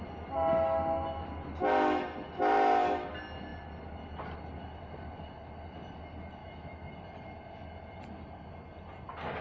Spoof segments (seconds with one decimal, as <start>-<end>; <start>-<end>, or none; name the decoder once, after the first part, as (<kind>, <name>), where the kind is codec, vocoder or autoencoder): 6.4-6.9 (autoencoder, DAC-VAE)